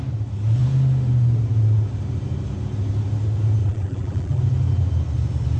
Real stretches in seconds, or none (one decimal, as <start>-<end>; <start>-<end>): 0.0-3.6; 4.4-5.6